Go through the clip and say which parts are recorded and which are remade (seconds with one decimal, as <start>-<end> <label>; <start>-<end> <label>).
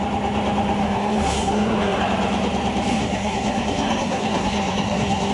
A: 0.0-0.8 recorded; 0.8-2.0 remade; 2.0-2.9 recorded; 2.9-5.3 remade